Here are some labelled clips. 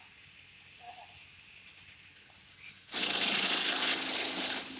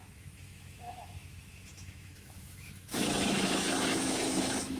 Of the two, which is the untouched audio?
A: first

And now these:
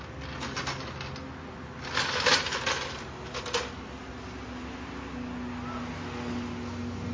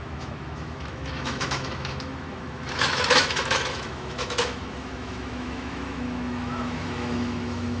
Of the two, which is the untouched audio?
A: first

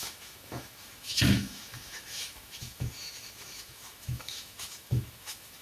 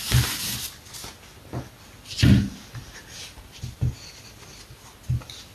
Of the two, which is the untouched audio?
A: second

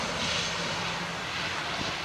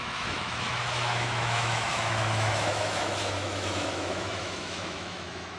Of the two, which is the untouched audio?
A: first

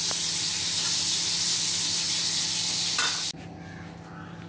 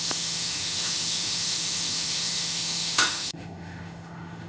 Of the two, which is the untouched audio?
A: first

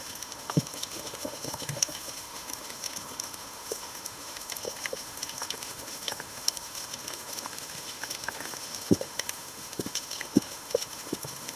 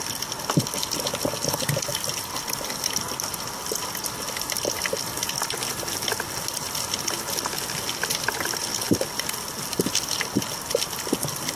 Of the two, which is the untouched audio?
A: second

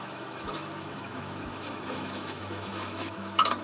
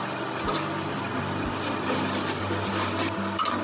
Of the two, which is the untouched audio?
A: second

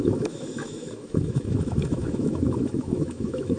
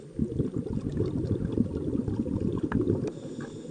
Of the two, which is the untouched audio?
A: second